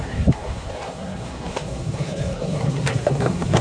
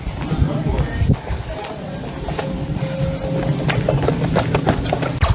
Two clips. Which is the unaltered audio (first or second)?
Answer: second